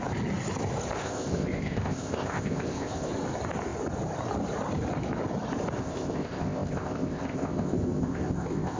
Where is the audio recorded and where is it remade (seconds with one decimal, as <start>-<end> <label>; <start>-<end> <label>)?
0.0-1.0 recorded; 1.0-3.1 remade; 3.1-5.8 recorded; 5.8-8.8 remade